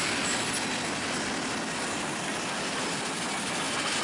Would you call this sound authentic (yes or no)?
yes